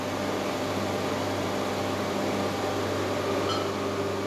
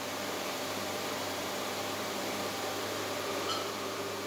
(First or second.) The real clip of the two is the first